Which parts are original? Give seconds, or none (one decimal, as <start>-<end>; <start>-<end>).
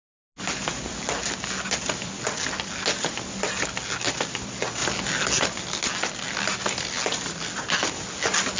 0.0-8.6